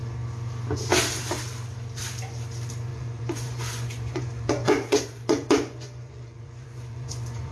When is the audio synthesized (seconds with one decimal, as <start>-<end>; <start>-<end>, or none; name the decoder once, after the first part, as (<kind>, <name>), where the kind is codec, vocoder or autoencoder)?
2.9-7.5 (vocoder, Vocos)